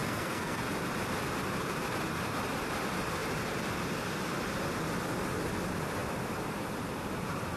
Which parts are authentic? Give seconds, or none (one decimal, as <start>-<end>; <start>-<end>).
0.6-7.6